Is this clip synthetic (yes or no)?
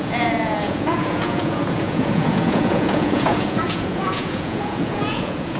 yes